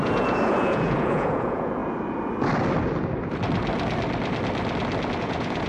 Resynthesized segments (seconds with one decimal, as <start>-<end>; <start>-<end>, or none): 0.0-1.8; 5.2-5.7